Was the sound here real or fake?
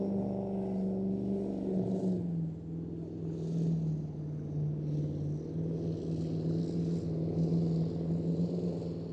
real